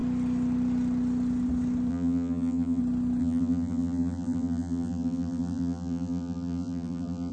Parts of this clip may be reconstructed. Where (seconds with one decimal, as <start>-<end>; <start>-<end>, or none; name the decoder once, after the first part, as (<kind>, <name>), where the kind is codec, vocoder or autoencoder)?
1.9-2.8 (vocoder, BigVGAN v2); 3.2-7.3